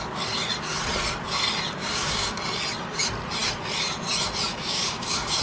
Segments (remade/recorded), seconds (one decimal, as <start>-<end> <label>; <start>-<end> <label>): 0.0-1.8 recorded; 1.8-2.4 remade; 2.4-4.5 recorded; 4.5-5.4 remade